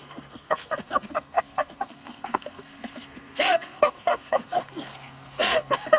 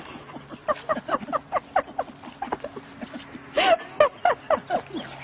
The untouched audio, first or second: second